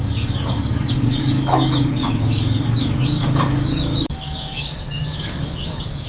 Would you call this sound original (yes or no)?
no